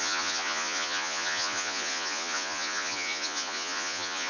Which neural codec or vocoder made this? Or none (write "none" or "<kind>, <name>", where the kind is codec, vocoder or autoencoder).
vocoder, Vocos